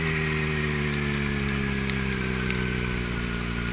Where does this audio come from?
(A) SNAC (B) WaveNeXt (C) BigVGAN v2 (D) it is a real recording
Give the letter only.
D